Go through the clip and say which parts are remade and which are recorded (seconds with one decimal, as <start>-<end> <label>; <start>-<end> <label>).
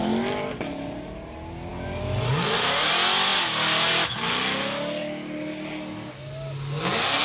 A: 0.0-7.2 recorded